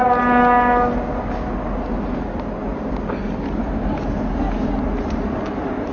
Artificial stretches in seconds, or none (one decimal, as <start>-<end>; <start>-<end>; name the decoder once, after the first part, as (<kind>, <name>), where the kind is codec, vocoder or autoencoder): none